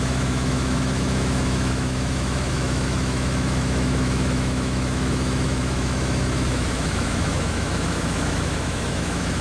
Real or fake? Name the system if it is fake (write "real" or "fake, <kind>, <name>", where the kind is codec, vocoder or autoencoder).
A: fake, autoencoder, DAC-VAE